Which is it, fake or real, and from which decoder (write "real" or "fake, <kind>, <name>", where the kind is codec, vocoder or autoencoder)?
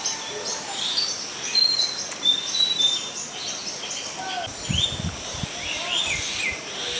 real